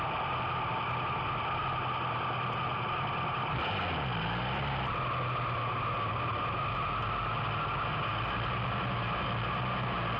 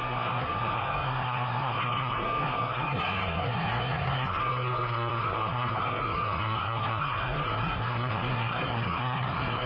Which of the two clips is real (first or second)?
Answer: first